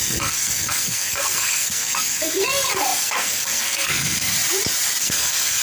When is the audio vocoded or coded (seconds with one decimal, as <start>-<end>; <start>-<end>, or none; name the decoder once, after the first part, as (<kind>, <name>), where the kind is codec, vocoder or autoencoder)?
0.0-4.3 (codec, SNAC); 5.0-5.6